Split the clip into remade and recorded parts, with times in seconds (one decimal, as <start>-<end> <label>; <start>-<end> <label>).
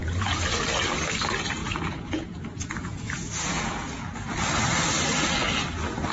0.0-0.6 remade; 0.6-1.6 recorded; 1.6-4.3 remade; 4.3-6.1 recorded